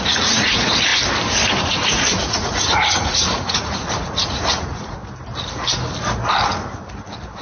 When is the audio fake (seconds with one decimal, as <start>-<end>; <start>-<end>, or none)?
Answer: 0.0-0.9; 1.6-5.0